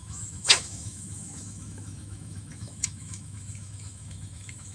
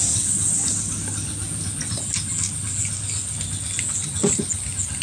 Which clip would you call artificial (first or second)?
first